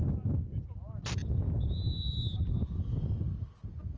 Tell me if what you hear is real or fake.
real